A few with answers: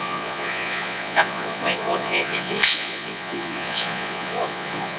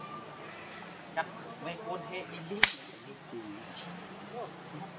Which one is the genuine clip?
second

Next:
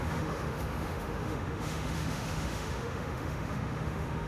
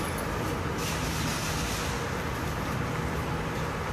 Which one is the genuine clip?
second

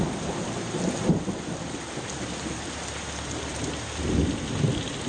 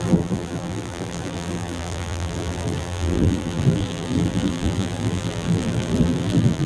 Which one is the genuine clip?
first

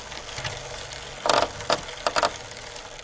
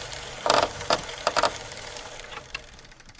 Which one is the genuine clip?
first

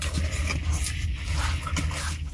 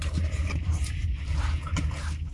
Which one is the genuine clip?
first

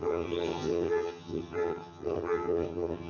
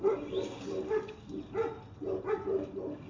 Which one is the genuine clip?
second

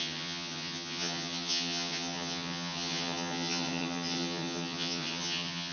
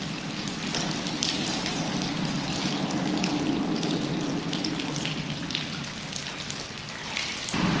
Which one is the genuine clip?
second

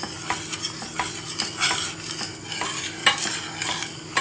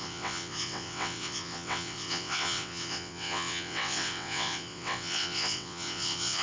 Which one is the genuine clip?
first